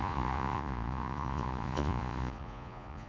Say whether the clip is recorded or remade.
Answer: remade